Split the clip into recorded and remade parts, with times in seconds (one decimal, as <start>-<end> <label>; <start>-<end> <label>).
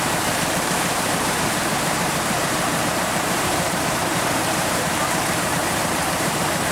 0.0-6.7 remade